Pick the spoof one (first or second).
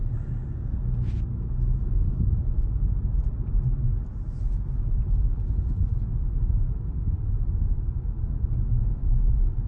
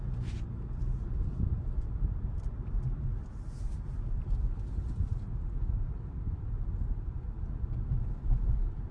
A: second